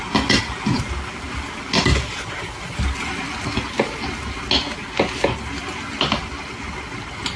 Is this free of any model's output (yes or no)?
yes